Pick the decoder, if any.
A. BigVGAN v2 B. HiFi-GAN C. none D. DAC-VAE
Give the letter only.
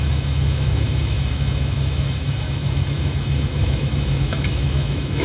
D